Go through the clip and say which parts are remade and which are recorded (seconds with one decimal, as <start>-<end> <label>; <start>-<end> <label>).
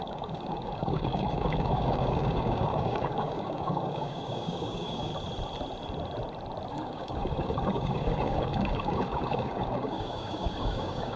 0.0-5.1 remade; 5.1-6.7 recorded; 6.7-11.2 remade